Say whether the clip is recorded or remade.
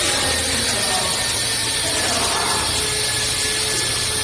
recorded